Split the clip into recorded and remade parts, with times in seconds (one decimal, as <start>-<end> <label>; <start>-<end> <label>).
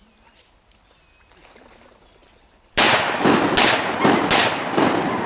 0.0-5.3 recorded